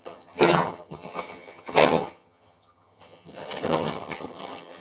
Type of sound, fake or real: fake